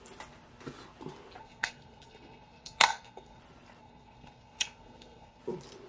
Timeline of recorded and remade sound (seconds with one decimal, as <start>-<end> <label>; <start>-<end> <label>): 0.0-1.4 recorded; 1.4-3.4 remade; 3.4-3.8 recorded; 3.8-5.4 remade; 5.4-5.9 recorded